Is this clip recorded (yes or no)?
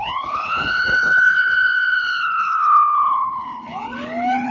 no